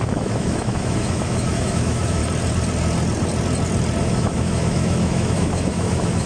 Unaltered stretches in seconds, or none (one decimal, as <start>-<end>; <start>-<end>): 2.2-4.0